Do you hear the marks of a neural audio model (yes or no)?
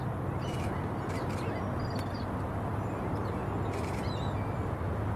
no